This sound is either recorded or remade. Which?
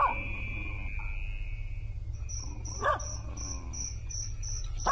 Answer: recorded